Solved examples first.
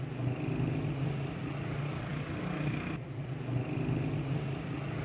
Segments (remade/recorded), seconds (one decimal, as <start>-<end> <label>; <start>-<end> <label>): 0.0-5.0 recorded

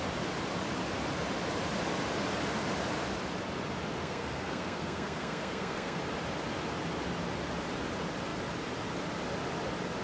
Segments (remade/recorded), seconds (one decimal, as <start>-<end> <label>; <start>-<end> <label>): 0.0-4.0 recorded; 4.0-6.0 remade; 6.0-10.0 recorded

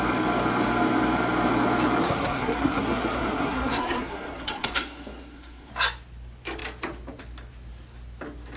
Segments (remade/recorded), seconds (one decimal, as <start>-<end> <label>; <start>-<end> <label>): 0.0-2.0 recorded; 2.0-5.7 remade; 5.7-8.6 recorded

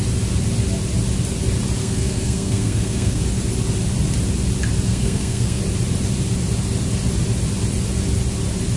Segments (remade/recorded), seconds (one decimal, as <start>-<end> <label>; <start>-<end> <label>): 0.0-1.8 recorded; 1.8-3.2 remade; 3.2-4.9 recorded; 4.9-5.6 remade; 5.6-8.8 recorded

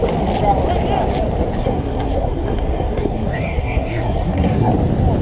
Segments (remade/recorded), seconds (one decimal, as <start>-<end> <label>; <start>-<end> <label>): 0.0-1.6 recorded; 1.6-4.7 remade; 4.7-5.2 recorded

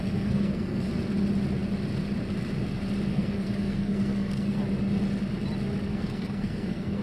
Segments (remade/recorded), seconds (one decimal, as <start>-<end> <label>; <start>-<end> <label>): 0.0-0.9 remade; 0.9-3.1 recorded; 3.1-4.6 remade; 4.6-5.9 recorded; 5.9-7.0 remade